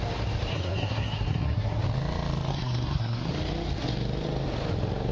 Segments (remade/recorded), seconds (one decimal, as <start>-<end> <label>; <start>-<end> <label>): 0.0-0.5 recorded; 0.5-1.8 remade; 1.8-2.5 recorded; 2.5-3.3 remade; 3.3-5.1 recorded